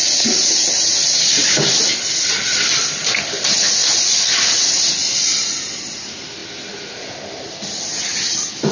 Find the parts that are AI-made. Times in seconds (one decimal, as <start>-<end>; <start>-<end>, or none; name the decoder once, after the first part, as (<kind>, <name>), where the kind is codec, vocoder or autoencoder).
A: none